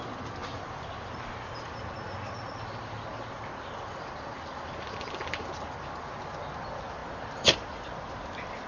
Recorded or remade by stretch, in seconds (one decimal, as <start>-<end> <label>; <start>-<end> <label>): 0.0-8.7 recorded